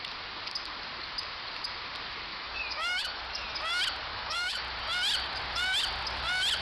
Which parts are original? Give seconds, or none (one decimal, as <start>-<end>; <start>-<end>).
0.0-2.3; 3.2-4.1; 4.6-6.6